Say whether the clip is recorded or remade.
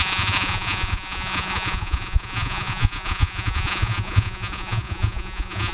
remade